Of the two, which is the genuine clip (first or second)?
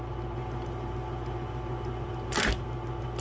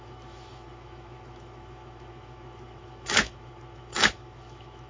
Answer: first